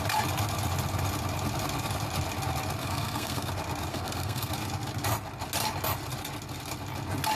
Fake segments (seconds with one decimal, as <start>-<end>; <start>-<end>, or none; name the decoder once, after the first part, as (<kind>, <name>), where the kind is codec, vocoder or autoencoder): 2.8-3.5 (codec, SNAC); 3.9-4.5

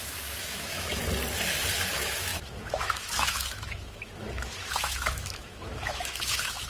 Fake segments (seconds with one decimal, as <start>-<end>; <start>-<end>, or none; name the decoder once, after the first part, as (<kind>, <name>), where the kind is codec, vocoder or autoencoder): 0.0-1.0 (autoencoder, DAC-VAE); 1.9-6.7

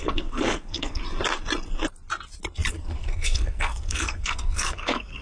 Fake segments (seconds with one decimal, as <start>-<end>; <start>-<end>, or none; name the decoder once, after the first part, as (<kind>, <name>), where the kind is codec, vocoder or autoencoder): 0.0-1.0 (codec, SNAC); 2.7-5.2